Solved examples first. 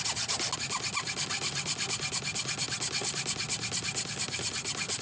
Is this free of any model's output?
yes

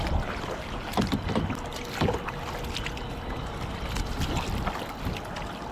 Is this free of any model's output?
yes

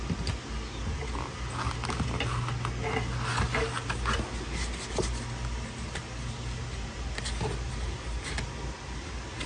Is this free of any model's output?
yes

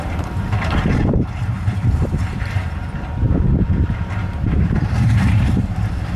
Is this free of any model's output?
no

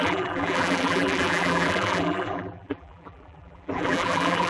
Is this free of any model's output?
no